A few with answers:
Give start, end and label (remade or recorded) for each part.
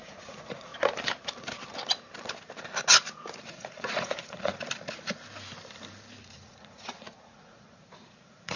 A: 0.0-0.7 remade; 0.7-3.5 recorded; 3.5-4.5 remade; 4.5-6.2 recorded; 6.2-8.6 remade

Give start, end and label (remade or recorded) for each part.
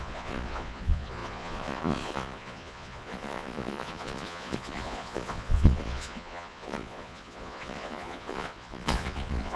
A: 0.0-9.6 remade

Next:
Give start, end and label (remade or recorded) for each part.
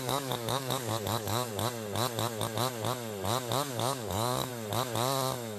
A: 0.0-1.5 remade; 1.5-3.7 recorded; 3.7-4.5 remade; 4.5-5.6 recorded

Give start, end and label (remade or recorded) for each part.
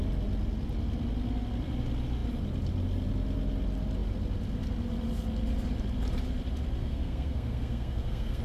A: 0.0-6.8 recorded; 6.8-8.4 remade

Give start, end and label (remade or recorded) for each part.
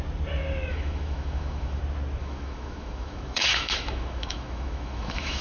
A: 0.0-0.7 recorded; 0.7-1.8 remade; 1.8-2.2 recorded; 2.2-5.4 remade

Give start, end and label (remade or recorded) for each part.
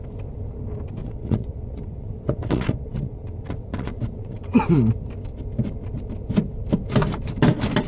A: 0.0-1.0 recorded; 1.0-4.6 remade; 4.6-7.9 recorded